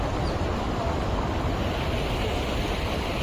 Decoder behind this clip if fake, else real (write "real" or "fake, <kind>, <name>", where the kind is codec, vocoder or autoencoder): real